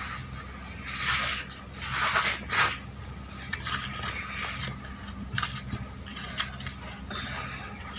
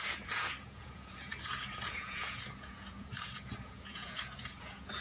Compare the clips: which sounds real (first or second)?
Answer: first